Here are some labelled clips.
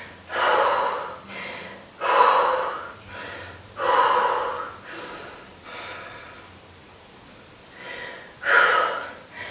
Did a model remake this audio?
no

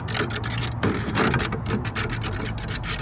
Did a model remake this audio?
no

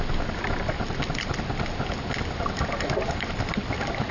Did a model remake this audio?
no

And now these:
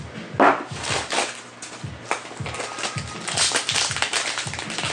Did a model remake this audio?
no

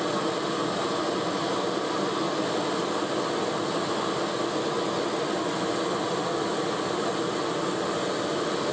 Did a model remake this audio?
no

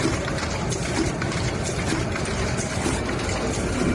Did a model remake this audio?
no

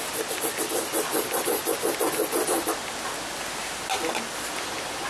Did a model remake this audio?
no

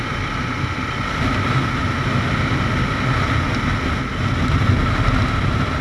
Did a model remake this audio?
no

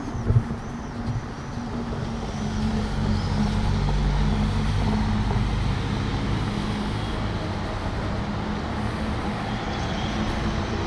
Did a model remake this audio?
no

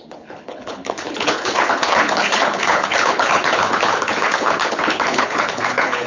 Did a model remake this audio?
yes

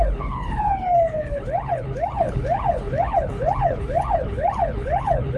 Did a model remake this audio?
yes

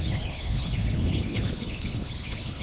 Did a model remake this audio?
yes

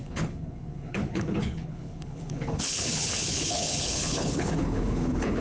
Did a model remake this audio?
yes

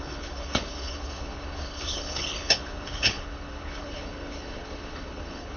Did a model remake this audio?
yes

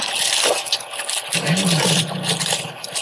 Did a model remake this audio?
no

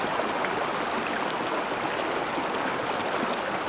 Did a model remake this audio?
no